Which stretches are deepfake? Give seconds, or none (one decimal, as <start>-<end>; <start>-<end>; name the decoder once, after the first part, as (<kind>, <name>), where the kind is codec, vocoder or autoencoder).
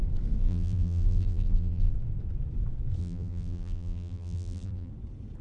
0.4-1.9 (vocoder, BigVGAN v2); 3.0-4.9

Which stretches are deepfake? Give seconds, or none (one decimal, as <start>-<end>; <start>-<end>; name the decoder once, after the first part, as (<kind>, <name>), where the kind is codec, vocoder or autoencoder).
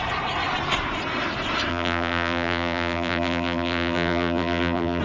1.7-5.0 (vocoder, BigVGAN v2)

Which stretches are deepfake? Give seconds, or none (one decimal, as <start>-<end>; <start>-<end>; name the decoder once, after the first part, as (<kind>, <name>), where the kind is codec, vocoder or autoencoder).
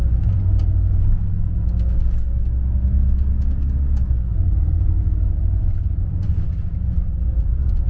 4.5-7.9 (vocoder, BigVGAN v2)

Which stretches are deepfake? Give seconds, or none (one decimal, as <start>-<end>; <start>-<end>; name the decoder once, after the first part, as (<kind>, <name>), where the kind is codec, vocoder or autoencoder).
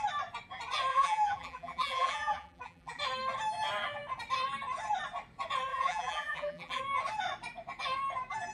0.9-3.0 (vocoder, BigVGAN v2); 5.7-6.8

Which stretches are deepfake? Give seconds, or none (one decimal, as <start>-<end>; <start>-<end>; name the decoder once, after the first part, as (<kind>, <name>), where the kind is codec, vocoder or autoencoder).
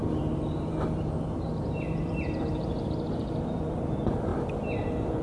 0.0-4.3 (vocoder, BigVGAN v2)